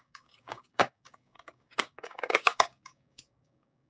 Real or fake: fake